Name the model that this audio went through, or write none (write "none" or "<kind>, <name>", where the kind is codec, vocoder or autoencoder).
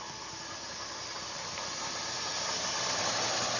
none